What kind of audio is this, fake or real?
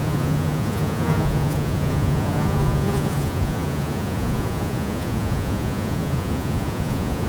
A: fake